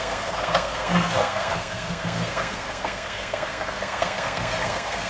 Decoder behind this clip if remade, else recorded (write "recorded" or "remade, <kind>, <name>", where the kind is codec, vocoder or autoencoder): remade, codec, SNAC